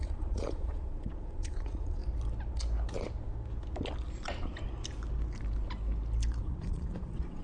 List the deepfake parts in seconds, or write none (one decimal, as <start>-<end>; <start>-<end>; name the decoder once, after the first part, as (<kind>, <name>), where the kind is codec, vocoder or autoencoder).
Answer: 0.0-2.0 (vocoder, Vocos); 6.4-7.4